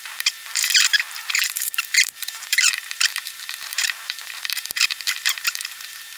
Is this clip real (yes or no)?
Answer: no